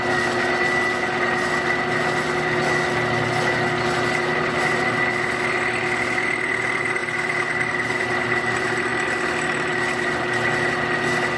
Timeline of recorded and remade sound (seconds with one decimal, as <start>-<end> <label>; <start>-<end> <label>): 0.0-11.4 recorded

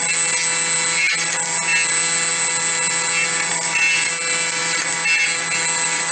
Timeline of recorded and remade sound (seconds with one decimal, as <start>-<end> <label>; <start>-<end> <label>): 0.0-6.1 recorded

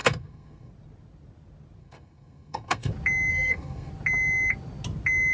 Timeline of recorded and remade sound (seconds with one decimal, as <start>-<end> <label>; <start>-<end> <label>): 0.0-0.7 remade; 0.7-1.8 recorded; 1.8-2.9 remade; 2.9-3.3 recorded; 3.3-3.9 remade; 3.9-5.3 recorded

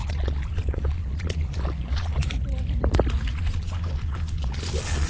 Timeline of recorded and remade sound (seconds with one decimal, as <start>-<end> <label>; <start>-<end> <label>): 0.0-2.3 remade; 2.3-3.3 recorded; 3.3-5.1 remade

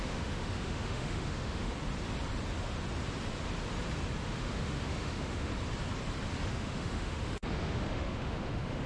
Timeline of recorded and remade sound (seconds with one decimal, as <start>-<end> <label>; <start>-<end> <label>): 0.0-1.7 remade; 1.7-4.2 recorded; 4.2-5.5 remade; 5.5-6.5 recorded; 6.5-8.9 remade

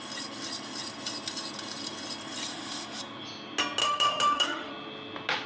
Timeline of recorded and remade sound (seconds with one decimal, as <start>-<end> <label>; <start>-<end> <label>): 0.0-2.5 recorded; 2.5-3.0 remade; 3.0-3.8 recorded; 3.8-4.7 remade; 4.7-5.5 recorded